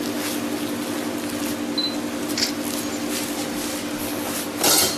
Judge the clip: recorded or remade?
recorded